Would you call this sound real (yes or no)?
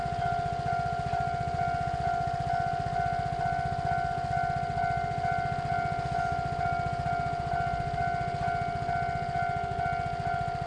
yes